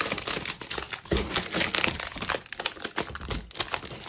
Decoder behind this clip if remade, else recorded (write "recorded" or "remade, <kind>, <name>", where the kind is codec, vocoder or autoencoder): recorded